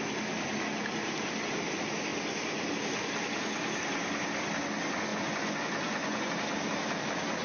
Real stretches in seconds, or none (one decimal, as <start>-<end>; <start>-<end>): 0.0-5.1; 6.3-7.4